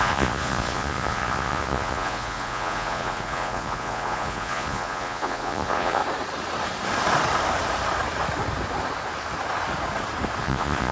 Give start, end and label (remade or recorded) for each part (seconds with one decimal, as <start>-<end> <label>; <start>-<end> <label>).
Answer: 0.0-6.0 remade; 6.0-10.4 recorded; 10.4-10.9 remade